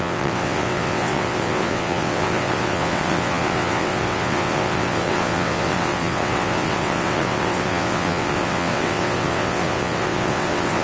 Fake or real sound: fake